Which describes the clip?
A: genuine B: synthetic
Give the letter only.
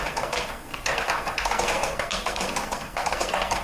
B